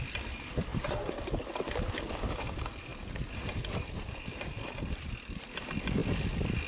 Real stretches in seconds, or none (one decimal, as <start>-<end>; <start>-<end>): 0.0-0.7; 1.2-2.9; 5.1-6.7